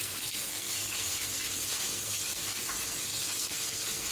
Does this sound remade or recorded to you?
remade